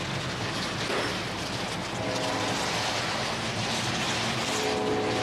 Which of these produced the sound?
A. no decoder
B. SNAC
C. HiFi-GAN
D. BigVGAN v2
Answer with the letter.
A